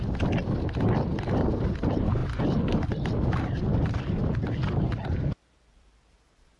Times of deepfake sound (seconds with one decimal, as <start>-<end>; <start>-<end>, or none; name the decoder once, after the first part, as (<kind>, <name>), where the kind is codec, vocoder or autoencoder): none